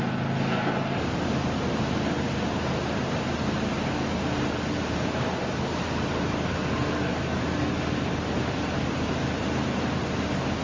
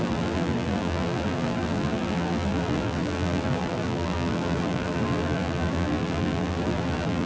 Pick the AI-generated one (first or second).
second